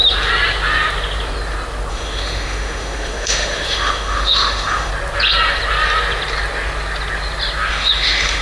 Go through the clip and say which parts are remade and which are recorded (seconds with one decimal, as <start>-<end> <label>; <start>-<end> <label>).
0.0-1.9 recorded; 1.9-4.9 remade; 4.9-7.7 recorded; 7.7-8.4 remade